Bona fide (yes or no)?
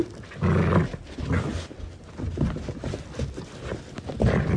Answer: yes